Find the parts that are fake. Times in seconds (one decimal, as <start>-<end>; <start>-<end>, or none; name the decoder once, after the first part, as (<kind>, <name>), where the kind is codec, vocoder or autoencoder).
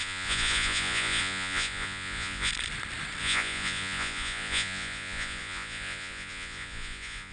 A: 0.0-2.5 (vocoder, Vocos); 3.2-7.3